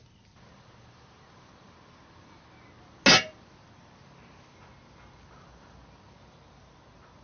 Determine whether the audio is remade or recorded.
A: recorded